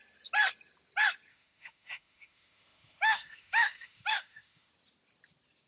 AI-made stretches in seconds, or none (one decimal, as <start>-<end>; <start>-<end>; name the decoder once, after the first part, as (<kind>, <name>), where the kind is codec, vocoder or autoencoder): 1.3-4.7 (autoencoder, DAC-VAE)